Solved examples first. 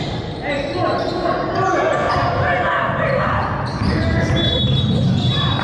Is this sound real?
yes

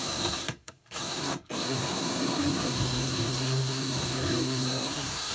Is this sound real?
no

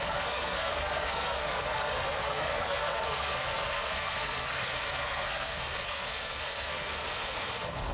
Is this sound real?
no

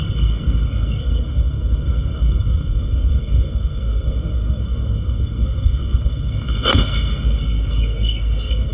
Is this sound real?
no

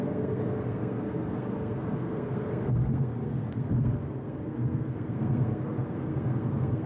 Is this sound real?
no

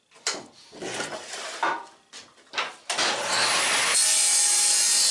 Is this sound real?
yes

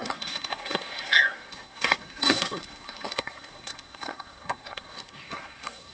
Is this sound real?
no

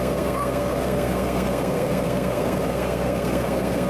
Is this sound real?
no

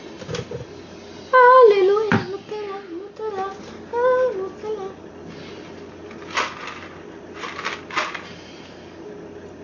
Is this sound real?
yes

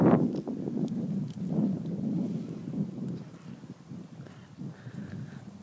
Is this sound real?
yes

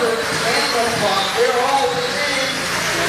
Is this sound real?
yes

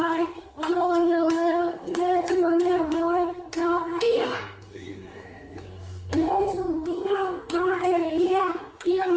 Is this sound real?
no